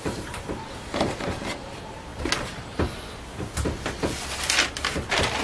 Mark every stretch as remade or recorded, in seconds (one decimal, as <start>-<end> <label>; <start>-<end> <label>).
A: 0.0-2.1 remade; 2.1-5.4 recorded